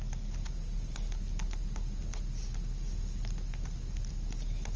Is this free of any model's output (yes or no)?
yes